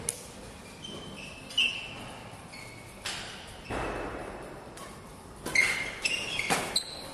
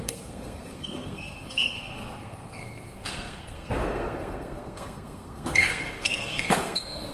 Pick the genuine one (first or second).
first